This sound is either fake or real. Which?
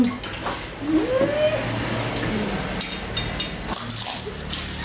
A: real